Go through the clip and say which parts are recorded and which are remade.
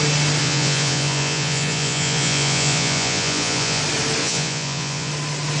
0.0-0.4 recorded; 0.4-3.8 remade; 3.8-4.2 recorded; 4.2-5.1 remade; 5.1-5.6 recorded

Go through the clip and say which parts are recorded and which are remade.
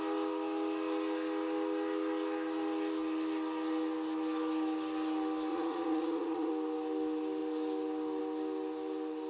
0.0-5.5 recorded; 5.5-6.5 remade; 6.5-9.3 recorded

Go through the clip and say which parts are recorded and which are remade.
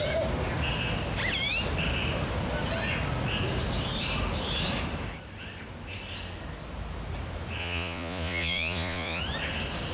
0.0-7.6 recorded; 7.6-9.2 remade; 9.2-9.9 recorded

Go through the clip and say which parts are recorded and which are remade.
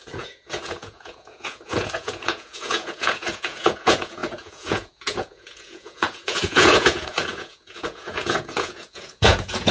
0.0-9.7 remade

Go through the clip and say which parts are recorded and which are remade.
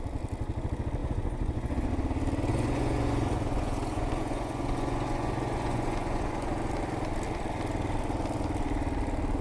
0.0-1.0 recorded; 1.0-1.9 remade; 1.9-2.5 recorded; 2.5-6.6 remade; 6.6-9.4 recorded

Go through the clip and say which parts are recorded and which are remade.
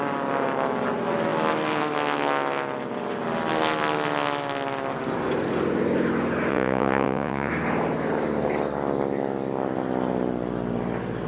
0.0-6.5 recorded; 6.5-7.5 remade; 7.5-11.3 recorded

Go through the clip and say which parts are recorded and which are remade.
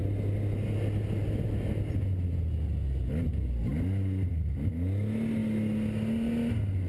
0.0-6.9 recorded